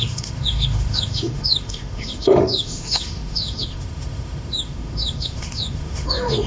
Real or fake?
fake